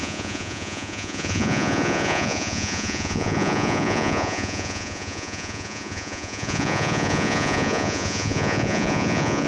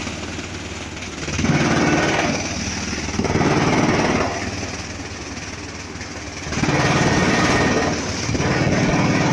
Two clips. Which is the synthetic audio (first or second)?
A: first